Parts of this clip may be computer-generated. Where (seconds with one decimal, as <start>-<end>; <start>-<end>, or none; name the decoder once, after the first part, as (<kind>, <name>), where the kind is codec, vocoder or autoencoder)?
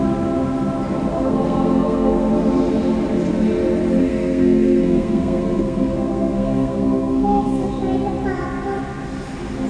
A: 1.1-2.3 (codec, SNAC); 4.1-7.8